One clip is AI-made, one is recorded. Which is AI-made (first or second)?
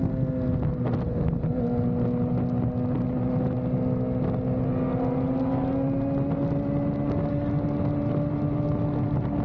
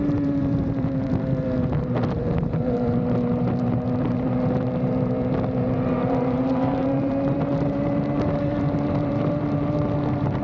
second